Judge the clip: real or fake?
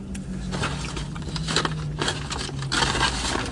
real